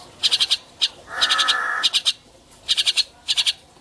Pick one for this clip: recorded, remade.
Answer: recorded